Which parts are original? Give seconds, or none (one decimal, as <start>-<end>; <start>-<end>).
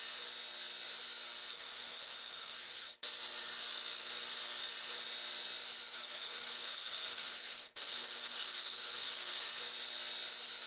0.0-1.5; 2.9-5.9; 9.5-10.7